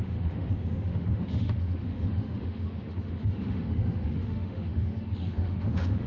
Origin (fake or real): fake